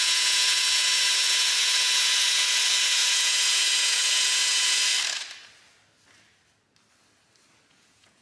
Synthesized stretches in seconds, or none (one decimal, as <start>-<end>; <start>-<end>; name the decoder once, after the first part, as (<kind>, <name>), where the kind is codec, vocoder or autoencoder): 0.0-4.9 (vocoder, Vocos); 7.7-8.2